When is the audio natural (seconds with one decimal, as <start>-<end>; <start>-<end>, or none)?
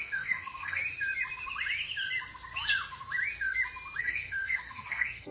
0.8-4.0